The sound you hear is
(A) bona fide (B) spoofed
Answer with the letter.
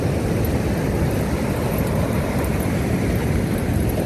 A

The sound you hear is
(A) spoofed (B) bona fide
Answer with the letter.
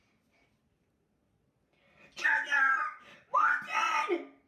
B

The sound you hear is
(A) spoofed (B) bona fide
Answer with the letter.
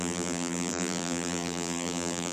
A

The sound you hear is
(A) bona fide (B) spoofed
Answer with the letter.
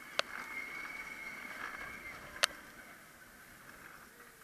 A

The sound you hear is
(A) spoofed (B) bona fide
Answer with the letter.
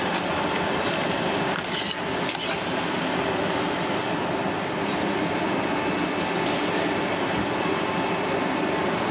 B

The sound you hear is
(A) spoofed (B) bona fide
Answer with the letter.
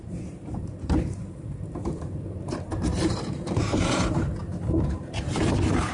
A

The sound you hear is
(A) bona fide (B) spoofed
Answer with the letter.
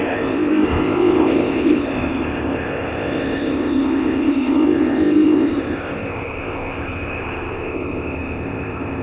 B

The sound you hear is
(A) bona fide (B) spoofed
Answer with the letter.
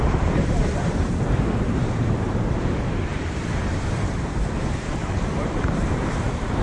B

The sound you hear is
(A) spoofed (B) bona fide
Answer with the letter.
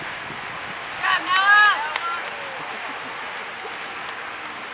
B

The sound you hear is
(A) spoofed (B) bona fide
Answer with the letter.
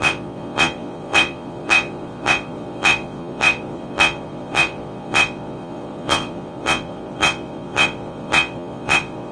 A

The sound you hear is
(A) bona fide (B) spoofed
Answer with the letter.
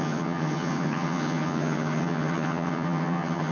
B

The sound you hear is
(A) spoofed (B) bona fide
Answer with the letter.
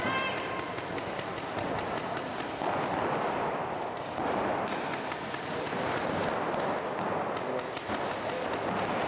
B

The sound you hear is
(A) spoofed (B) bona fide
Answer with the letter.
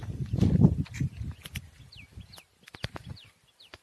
B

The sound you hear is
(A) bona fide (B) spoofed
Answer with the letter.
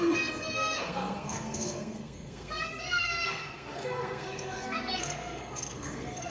B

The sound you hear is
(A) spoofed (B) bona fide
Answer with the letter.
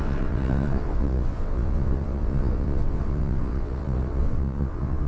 A